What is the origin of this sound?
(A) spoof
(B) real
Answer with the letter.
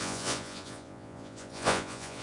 A